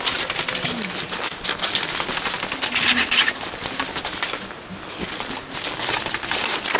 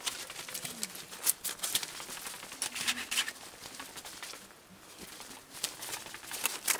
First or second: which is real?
first